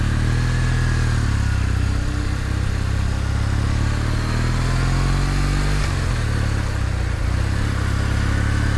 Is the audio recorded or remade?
recorded